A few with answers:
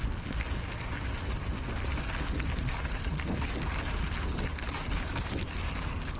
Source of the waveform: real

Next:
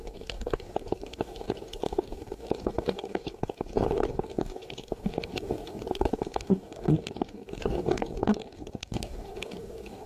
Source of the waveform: fake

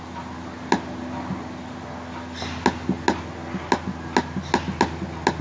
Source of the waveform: real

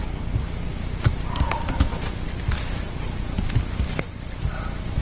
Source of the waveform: real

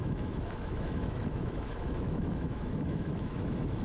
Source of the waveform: fake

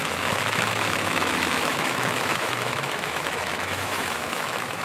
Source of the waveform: fake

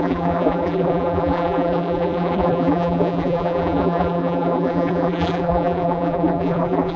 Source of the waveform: fake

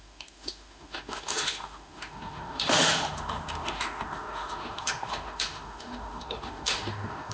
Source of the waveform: fake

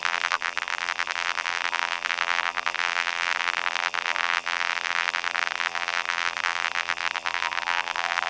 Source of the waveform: fake